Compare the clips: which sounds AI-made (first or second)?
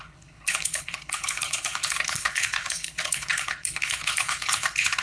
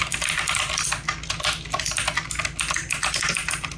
first